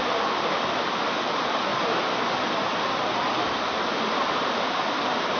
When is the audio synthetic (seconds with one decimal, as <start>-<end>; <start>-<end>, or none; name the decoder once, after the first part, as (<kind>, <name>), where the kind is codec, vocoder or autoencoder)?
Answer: none